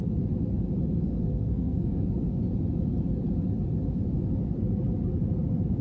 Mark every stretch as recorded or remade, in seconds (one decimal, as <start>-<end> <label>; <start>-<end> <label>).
0.0-1.1 recorded; 1.1-2.1 remade; 2.1-5.8 recorded